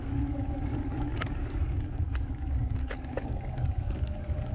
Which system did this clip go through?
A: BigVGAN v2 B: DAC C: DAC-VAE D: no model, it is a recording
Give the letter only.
B